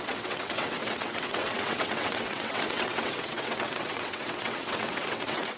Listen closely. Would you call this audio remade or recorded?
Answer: remade